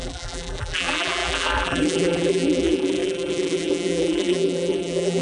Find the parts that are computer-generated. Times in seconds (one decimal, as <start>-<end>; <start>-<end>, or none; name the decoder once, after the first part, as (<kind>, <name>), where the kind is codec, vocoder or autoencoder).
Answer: 0.0-5.2 (vocoder, BigVGAN v2)

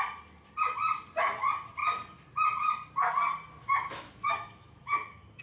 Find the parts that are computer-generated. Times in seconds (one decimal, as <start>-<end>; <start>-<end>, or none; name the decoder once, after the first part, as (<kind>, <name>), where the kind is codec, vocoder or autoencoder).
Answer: 3.6-5.4 (autoencoder, DAC-VAE)

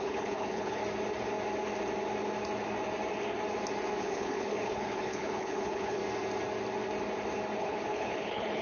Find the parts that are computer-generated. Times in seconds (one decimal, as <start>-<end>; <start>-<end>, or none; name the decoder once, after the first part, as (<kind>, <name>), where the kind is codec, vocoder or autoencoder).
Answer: 0.0-0.8 (codec, HILCodec); 4.0-6.0; 7.6-8.6

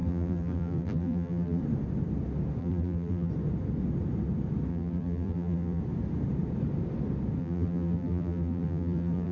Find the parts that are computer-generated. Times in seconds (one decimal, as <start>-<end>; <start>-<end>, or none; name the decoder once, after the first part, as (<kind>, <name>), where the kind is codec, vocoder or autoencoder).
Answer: 0.0-1.6 (vocoder, BigVGAN v2); 2.6-3.3; 4.7-5.8; 7.4-9.3